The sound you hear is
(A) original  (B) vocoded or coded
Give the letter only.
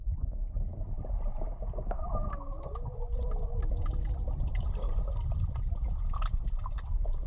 A